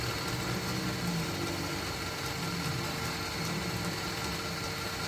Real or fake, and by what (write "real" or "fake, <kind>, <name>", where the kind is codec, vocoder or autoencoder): real